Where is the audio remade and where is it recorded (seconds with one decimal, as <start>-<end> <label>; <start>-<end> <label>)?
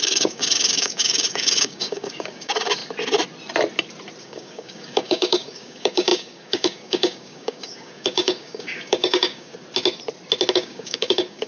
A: 0.0-2.8 remade; 2.8-4.2 recorded; 4.2-9.5 remade; 9.5-10.5 recorded; 10.5-11.5 remade